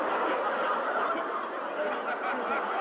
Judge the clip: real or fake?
real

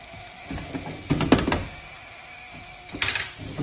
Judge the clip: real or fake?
real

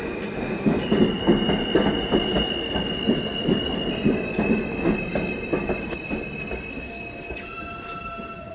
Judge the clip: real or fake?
real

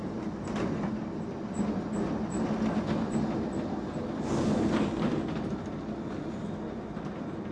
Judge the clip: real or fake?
real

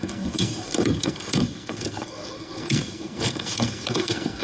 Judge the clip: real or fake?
fake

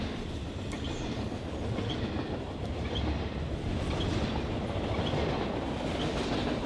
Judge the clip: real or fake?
real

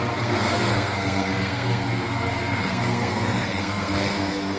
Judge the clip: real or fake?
fake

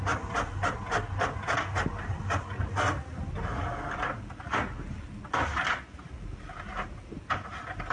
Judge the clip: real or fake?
real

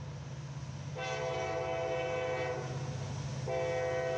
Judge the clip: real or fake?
real